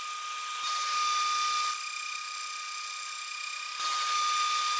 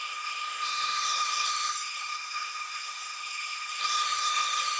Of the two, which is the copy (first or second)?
second